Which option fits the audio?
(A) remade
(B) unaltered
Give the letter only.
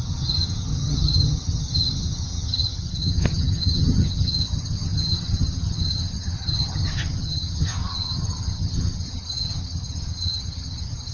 A